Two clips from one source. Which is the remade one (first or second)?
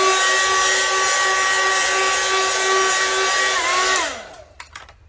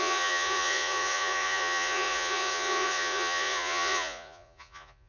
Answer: second